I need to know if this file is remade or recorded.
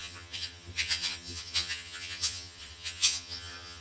remade